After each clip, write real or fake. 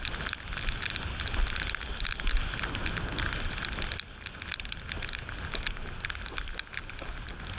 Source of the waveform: real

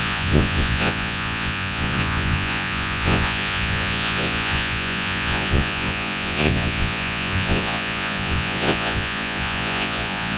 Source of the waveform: fake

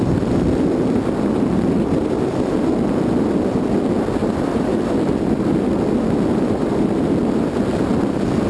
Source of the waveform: real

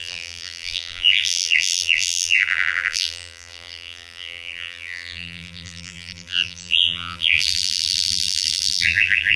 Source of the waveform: fake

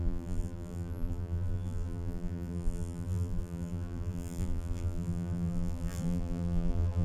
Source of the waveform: fake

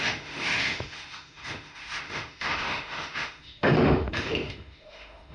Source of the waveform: fake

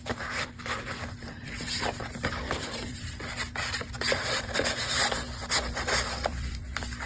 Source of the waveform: fake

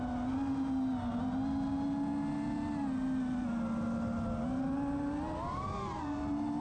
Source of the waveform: real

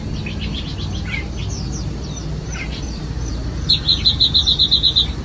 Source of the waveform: real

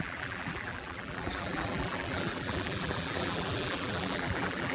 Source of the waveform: fake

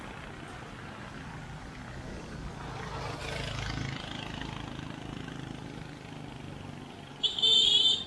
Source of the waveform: real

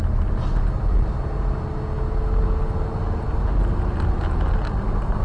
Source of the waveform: real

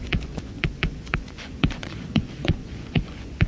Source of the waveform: fake